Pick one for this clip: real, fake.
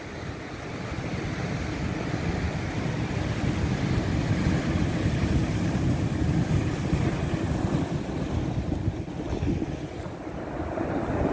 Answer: real